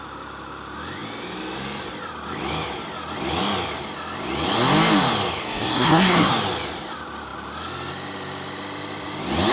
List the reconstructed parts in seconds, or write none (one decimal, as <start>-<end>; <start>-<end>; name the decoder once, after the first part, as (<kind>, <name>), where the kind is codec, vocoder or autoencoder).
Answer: 5.4-6.3 (codec, SNAC)